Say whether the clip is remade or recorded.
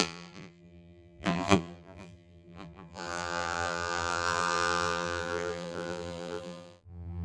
remade